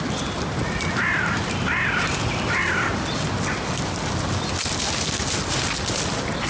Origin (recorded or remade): recorded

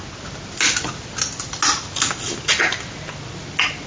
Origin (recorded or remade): recorded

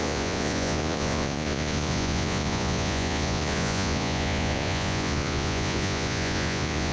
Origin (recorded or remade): remade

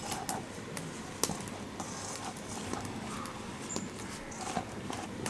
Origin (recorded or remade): recorded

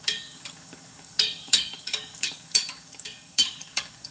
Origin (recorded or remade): remade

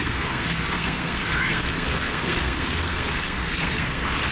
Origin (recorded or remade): remade